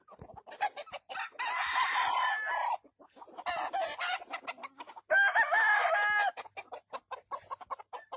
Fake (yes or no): no